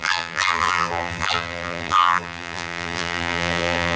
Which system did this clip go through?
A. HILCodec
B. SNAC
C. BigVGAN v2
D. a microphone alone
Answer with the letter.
C